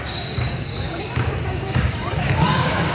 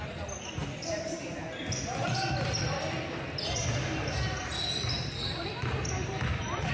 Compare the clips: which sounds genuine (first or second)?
second